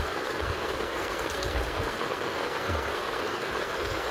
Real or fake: fake